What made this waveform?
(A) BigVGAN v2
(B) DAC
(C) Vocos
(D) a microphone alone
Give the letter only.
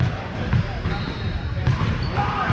A